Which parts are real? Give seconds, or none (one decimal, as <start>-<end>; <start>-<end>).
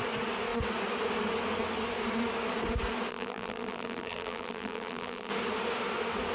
0.0-3.1; 5.3-6.3